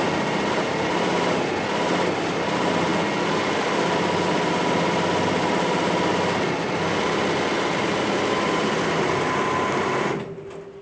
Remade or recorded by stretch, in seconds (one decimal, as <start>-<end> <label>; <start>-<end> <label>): 0.0-10.8 recorded